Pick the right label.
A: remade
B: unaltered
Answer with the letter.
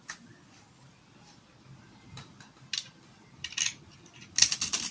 B